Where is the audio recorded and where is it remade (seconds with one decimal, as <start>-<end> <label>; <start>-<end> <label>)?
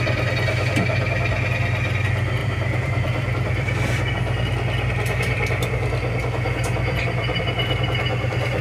0.0-2.4 recorded; 2.4-4.1 remade; 4.1-6.7 recorded; 6.7-7.4 remade; 7.4-8.6 recorded